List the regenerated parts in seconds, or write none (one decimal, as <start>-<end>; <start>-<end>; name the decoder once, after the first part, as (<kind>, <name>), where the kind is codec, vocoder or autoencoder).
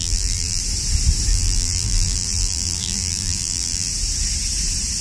0.0-0.6 (vocoder, BigVGAN v2); 1.3-3.9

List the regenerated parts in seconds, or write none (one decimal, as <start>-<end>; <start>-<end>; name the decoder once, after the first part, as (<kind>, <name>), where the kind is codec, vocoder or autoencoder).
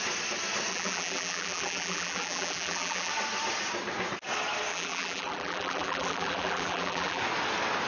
0.7-3.1 (vocoder, BigVGAN v2); 4.7-7.2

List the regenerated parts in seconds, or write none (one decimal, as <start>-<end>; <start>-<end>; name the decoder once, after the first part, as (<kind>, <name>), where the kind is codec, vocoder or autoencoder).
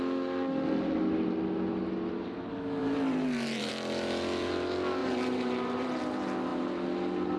2.8-3.7 (vocoder, BigVGAN v2); 5.0-6.0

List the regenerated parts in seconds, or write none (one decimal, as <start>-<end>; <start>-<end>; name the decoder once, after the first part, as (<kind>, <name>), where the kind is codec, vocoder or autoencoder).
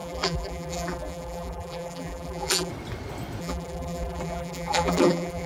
0.0-2.7 (vocoder, BigVGAN v2); 3.4-5.5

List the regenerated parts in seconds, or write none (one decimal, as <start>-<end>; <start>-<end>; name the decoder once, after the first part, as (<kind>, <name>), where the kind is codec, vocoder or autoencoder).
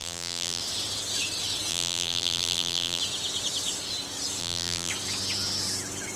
0.0-0.6 (vocoder, BigVGAN v2); 1.7-3.0; 4.4-4.9